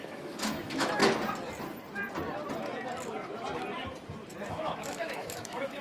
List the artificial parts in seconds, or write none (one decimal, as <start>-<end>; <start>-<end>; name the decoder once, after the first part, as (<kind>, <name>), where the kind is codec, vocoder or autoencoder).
0.0-1.0 (autoencoder, DAC-VAE); 4.5-5.8